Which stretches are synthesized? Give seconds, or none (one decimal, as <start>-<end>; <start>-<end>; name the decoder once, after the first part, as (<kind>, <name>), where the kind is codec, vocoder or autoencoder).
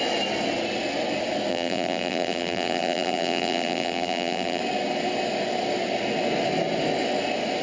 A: 1.5-4.6 (vocoder, BigVGAN v2)